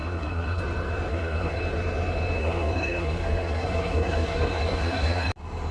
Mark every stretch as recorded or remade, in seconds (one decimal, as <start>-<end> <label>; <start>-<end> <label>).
0.0-0.6 remade; 0.6-1.1 recorded; 1.1-1.6 remade; 1.6-2.4 recorded; 2.4-5.3 remade; 5.3-5.7 recorded